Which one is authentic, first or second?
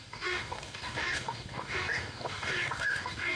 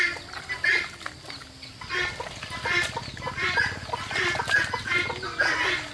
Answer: second